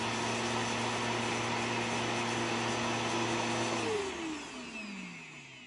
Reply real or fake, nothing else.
real